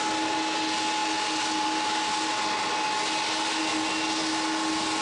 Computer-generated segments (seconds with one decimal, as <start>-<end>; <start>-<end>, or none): none